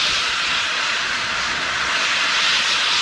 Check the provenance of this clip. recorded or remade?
remade